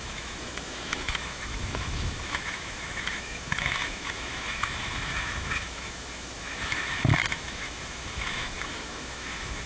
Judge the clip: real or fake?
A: fake